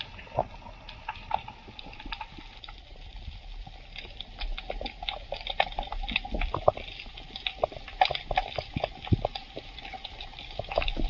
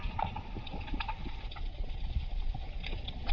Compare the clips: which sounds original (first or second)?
first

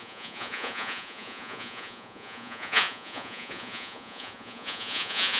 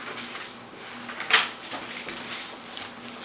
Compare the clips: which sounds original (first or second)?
second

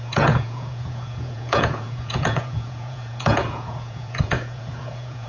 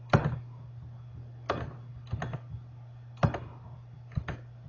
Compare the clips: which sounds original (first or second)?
second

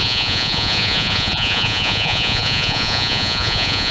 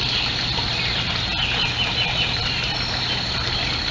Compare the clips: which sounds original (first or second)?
second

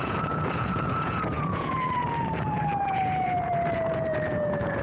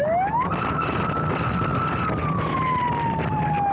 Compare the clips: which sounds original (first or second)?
second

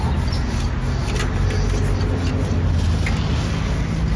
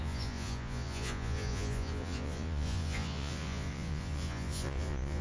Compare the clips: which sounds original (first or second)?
first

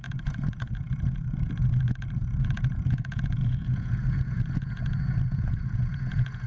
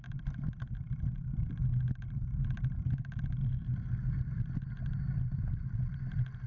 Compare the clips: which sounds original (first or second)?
second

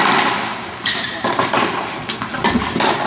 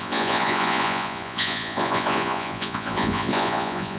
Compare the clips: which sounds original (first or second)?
first